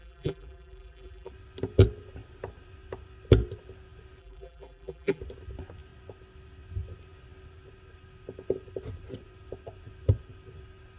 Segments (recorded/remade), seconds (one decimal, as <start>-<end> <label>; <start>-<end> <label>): 0.0-1.3 remade; 1.3-4.2 recorded; 4.2-5.2 remade; 5.2-11.0 recorded